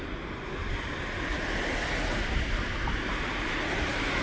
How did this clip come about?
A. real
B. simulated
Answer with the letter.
A